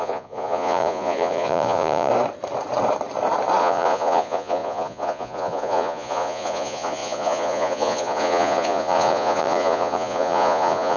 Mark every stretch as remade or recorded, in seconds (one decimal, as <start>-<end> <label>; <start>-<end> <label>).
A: 0.0-2.1 remade; 2.1-3.6 recorded; 3.6-11.0 remade